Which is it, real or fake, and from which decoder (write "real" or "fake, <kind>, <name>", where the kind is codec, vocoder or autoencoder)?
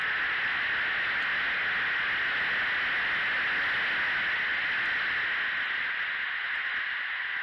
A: real